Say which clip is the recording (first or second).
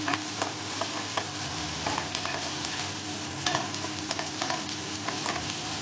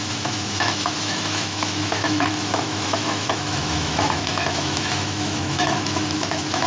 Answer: first